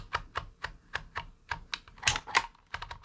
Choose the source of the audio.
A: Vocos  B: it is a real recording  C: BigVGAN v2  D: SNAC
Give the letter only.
B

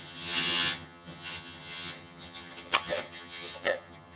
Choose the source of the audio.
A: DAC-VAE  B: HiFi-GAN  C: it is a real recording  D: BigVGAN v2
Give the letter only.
B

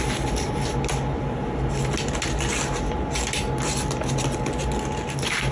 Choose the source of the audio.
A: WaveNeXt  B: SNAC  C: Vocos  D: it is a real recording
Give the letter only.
D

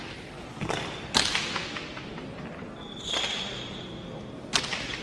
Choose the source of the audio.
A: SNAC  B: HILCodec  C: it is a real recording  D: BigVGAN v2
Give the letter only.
C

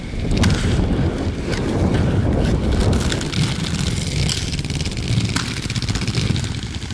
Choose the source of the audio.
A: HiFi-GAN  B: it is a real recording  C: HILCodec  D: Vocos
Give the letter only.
B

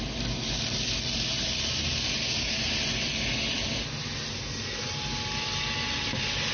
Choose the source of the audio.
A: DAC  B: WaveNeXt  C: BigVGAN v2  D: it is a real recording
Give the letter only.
D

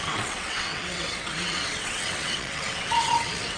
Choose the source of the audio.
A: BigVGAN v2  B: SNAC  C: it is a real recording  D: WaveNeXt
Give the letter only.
D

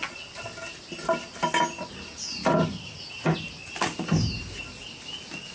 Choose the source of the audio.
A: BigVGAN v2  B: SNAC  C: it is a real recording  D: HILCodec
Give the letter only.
C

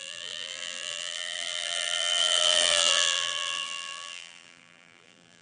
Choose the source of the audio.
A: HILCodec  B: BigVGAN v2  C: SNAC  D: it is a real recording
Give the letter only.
B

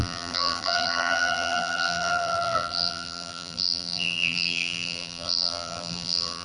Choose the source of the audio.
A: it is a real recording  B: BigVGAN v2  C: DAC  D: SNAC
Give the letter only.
B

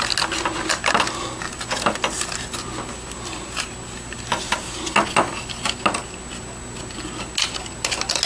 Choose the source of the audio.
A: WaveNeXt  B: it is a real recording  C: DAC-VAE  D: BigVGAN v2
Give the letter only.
B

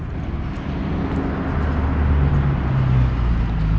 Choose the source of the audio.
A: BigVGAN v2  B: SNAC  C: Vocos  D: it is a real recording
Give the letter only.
D